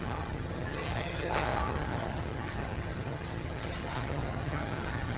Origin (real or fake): fake